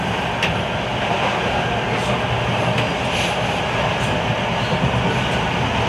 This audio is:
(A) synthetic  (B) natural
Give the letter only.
B